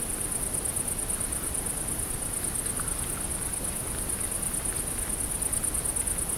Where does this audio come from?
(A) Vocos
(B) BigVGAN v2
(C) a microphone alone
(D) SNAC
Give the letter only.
C